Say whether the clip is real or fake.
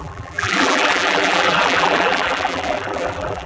fake